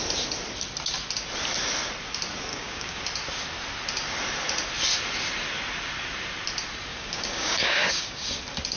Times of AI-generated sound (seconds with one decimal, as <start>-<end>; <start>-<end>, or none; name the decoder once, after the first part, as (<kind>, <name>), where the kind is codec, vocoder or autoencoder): 2.5-3.0 (codec, DAC); 6.9-8.4